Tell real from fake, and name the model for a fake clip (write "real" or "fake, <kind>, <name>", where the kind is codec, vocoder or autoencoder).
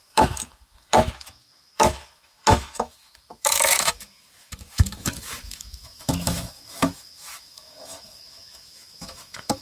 fake, autoencoder, DAC-VAE